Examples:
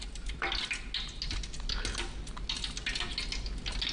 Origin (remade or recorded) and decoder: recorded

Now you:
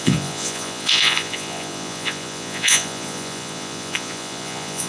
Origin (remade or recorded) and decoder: remade, vocoder, Vocos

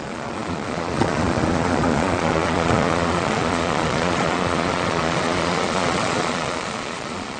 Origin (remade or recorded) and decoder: remade, vocoder, Vocos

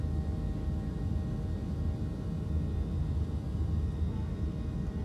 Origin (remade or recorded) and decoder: recorded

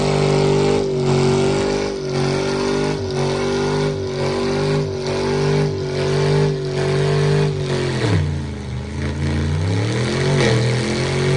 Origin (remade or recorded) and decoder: recorded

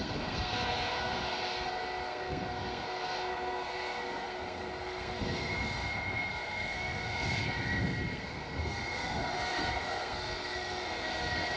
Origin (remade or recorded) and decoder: remade, codec, SNAC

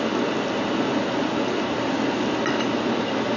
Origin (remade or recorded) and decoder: recorded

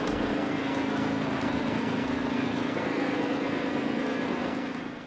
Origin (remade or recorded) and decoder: remade, codec, SNAC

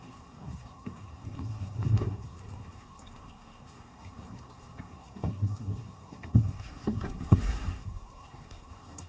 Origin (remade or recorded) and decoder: remade, codec, SNAC